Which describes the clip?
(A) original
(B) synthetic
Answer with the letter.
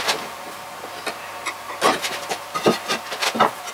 A